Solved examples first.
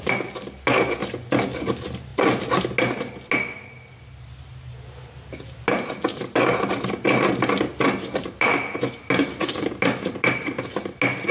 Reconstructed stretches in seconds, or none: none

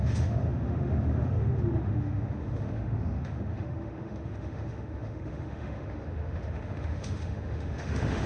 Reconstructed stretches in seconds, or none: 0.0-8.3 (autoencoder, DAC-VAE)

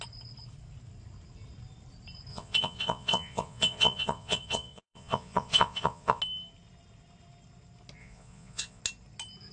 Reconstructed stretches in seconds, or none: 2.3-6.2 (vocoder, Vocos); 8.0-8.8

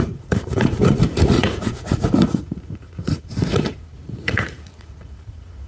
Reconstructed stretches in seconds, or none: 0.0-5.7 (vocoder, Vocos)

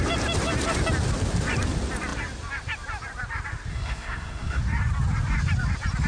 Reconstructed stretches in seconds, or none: 3.7-4.6 (codec, SNAC)